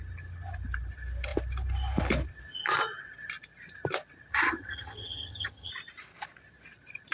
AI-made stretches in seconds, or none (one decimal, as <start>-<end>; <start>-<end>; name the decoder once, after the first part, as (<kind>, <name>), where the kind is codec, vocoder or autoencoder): 4.3-5.7 (vocoder, HiFi-GAN)